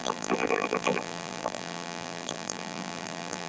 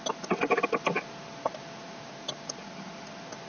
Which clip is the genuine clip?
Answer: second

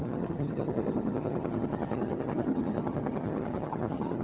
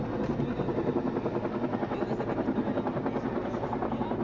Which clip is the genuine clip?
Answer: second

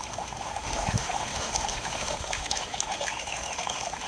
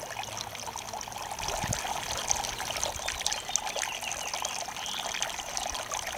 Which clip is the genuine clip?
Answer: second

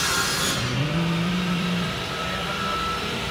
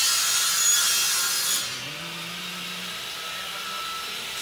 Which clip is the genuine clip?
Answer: second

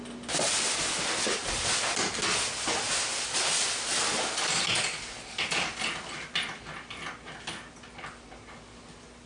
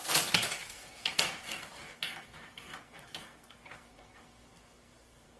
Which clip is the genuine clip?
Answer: first